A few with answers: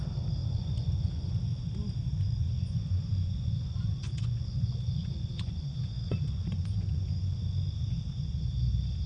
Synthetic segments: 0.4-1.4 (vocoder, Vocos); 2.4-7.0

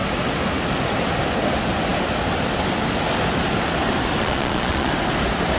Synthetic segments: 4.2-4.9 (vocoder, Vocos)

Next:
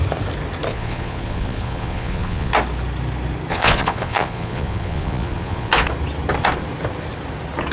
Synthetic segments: 0.7-2.5 (vocoder, Vocos); 3.5-5.7